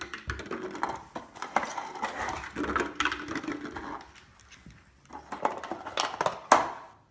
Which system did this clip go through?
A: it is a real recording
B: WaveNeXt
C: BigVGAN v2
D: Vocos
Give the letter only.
A